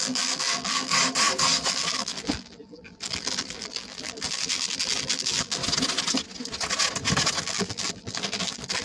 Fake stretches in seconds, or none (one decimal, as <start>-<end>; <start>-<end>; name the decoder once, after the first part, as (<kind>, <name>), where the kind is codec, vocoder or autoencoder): 0.0-0.9 (vocoder, BigVGAN v2); 1.7-5.6; 7.4-8.8